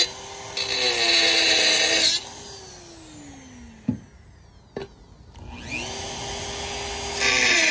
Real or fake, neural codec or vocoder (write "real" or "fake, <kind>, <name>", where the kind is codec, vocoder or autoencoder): real